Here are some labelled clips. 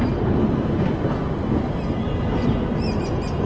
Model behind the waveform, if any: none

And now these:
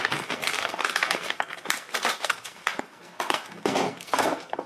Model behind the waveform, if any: codec, SNAC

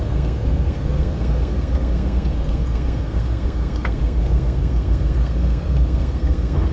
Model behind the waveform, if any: codec, SNAC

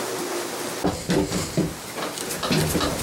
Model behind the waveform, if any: none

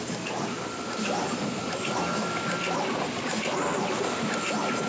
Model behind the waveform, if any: none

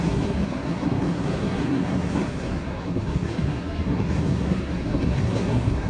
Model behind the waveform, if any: codec, SNAC